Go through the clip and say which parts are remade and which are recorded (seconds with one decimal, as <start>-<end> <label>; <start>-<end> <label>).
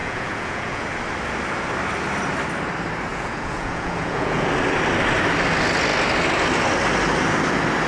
0.0-0.9 remade; 0.9-3.1 recorded; 3.1-4.5 remade; 4.5-7.9 recorded